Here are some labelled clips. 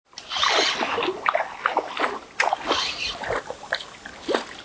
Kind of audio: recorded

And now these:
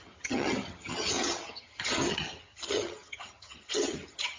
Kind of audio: remade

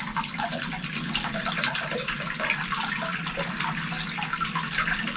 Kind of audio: recorded